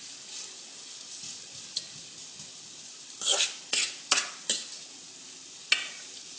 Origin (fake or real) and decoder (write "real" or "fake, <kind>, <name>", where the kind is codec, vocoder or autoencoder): real